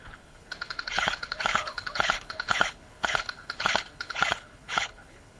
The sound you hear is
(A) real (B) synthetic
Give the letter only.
B